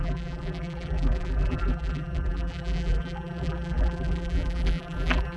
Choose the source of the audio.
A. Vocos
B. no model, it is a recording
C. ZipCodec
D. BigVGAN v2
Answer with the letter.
D